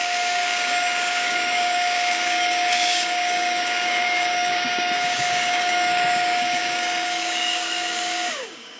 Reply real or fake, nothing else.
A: fake